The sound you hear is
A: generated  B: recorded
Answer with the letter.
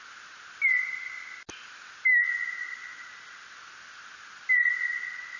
B